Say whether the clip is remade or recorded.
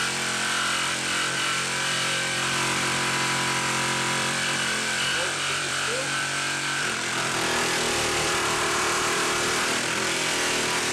remade